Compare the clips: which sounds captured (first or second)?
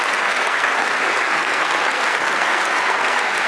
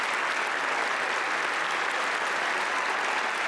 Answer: second